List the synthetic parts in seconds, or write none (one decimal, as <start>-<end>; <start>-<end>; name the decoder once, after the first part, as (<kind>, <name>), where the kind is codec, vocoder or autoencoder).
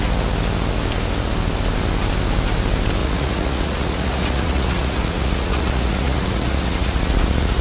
3.0-7.6 (vocoder, Vocos)